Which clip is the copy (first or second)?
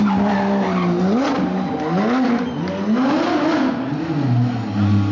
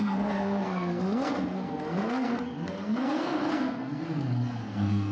second